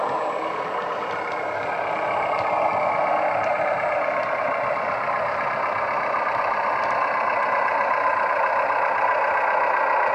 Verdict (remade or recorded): recorded